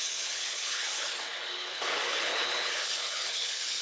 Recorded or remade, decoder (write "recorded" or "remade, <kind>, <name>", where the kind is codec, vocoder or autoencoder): remade, codec, HILCodec